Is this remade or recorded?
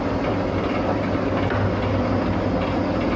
recorded